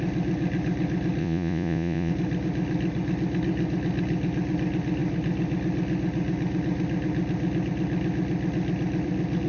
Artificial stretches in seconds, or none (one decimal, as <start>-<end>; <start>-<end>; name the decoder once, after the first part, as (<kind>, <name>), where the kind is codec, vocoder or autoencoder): 1.2-2.1 (vocoder, Vocos)